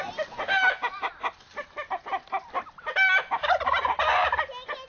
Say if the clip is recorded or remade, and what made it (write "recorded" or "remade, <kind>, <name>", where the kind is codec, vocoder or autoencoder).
recorded